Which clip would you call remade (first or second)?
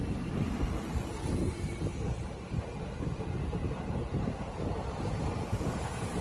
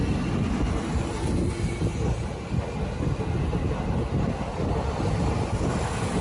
first